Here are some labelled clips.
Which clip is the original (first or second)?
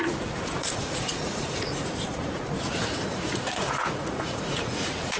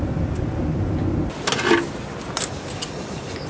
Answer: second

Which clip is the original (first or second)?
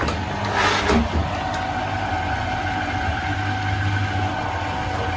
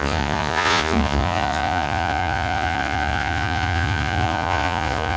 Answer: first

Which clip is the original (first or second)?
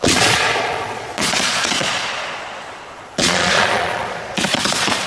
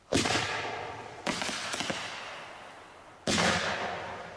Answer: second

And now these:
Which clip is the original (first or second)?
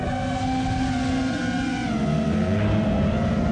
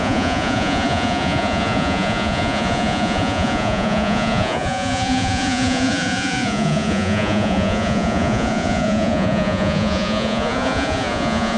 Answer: first